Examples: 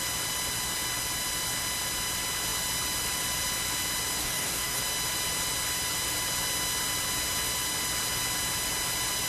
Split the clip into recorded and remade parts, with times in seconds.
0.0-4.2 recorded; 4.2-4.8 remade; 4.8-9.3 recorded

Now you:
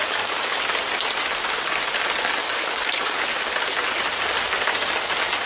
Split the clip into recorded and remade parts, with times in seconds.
0.0-0.6 remade; 0.6-2.4 recorded; 2.4-3.2 remade; 3.2-5.5 recorded

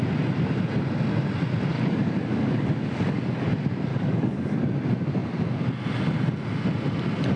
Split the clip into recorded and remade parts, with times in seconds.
0.0-1.7 recorded; 1.7-3.5 remade; 3.5-3.9 recorded; 3.9-4.6 remade; 4.6-7.4 recorded

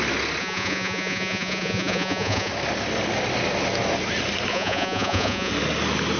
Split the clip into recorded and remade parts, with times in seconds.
0.0-0.4 recorded; 0.4-2.5 remade; 2.5-4.5 recorded; 4.5-5.5 remade; 5.5-6.2 recorded

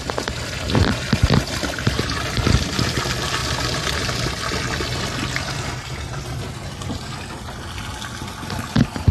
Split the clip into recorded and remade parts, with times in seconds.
0.0-9.1 recorded

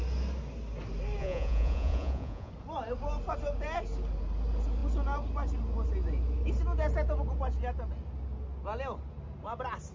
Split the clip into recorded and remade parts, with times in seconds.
0.0-1.2 recorded; 1.2-2.5 remade; 2.5-9.9 recorded